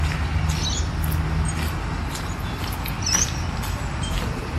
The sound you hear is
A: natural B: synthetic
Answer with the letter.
A